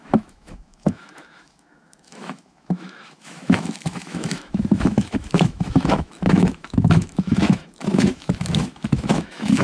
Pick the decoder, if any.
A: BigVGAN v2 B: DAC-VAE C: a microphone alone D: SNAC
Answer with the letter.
B